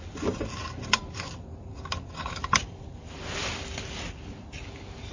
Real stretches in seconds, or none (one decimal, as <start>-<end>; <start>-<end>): 0.0-5.1